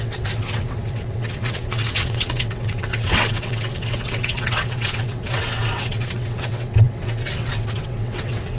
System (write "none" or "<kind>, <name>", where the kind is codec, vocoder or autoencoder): vocoder, WaveNeXt